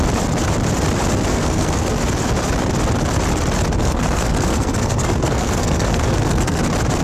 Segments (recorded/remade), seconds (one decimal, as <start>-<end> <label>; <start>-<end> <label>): 0.0-1.3 recorded; 1.3-1.9 remade; 1.9-3.8 recorded; 3.8-6.6 remade; 6.6-7.0 recorded